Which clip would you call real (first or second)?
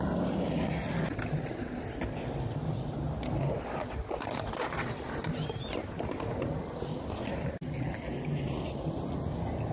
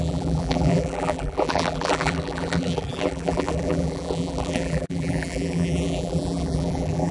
first